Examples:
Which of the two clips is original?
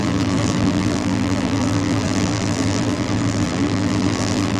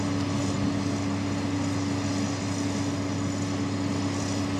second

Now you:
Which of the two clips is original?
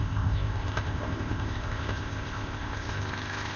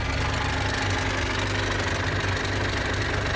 second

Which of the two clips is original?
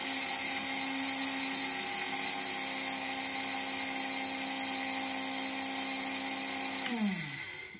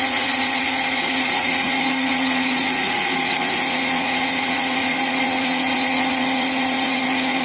first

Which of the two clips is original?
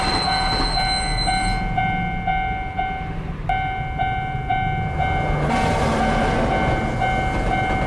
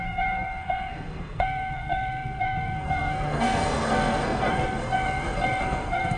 first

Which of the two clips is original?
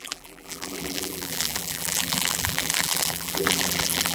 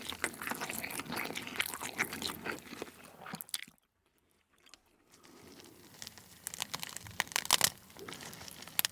second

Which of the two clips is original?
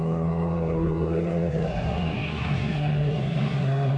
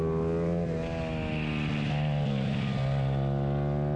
second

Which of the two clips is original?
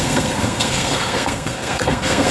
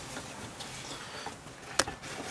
second